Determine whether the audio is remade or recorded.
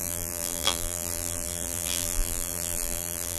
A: remade